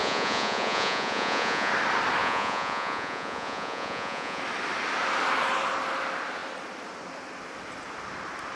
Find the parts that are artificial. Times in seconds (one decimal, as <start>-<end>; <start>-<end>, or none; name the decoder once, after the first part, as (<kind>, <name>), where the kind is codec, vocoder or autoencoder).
0.0-1.7 (vocoder, Vocos); 2.2-4.4